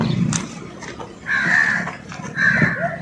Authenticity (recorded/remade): recorded